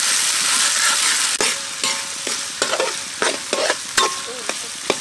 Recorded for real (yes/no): yes